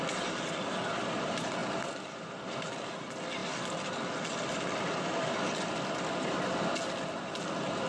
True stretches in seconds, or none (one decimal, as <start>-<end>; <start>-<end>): 0.0-7.9